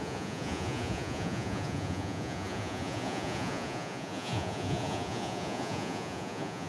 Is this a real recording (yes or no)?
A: no